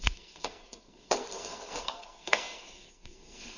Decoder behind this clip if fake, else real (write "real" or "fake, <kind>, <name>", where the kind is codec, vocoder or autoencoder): fake, codec, SNAC